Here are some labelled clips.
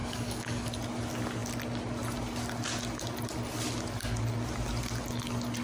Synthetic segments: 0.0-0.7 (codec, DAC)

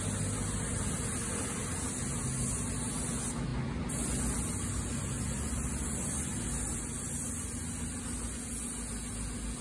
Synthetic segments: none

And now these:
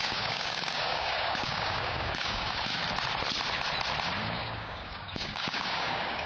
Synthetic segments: 0.0-2.8 (codec, DAC); 4.2-6.3

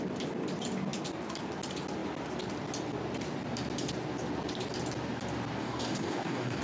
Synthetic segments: 5.6-6.6 (codec, DAC)

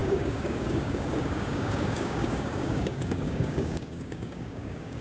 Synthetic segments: 0.0-5.0 (codec, DAC)

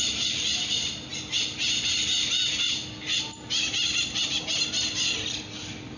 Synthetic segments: none

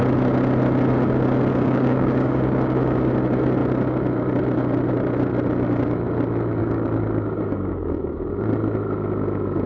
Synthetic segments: 1.5-3.1 (codec, DAC); 6.6-8.3

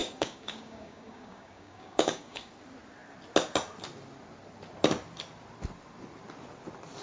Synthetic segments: 0.0-2.5 (codec, DAC)